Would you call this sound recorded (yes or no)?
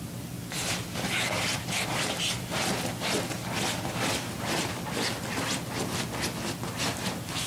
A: yes